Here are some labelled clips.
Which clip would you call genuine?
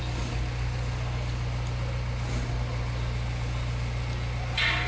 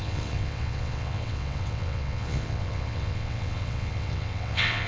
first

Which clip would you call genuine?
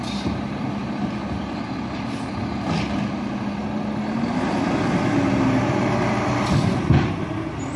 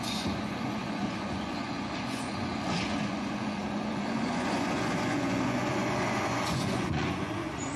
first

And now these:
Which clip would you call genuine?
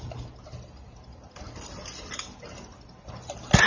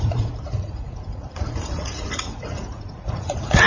first